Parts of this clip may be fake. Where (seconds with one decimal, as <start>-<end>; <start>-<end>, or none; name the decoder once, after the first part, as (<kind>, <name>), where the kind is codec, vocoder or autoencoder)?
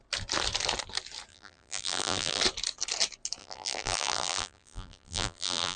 1.3-2.4 (vocoder, BigVGAN v2); 3.4-5.8